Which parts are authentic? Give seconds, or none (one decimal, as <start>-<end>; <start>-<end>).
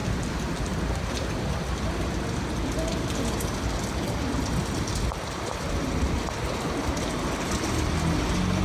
0.0-8.6